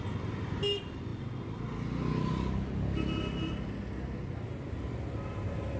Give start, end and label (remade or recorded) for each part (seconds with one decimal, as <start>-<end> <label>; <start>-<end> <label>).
0.0-5.8 recorded